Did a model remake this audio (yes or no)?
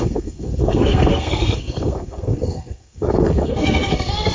yes